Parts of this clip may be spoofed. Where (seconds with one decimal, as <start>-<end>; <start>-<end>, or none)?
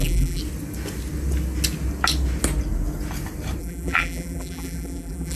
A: 0.0-0.4; 3.6-5.4